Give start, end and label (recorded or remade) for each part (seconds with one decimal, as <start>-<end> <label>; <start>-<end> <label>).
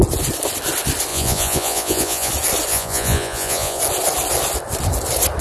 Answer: 0.0-1.1 recorded; 1.1-2.3 remade; 2.3-2.7 recorded; 2.7-3.8 remade; 3.8-5.4 recorded